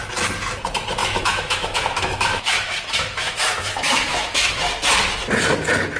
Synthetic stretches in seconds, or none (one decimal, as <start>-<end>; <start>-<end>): 1.0-4.6